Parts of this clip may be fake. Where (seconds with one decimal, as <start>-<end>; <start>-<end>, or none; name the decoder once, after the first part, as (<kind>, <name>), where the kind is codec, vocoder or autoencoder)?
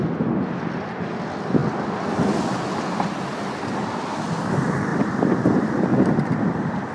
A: 4.9-6.9 (vocoder, BigVGAN v2)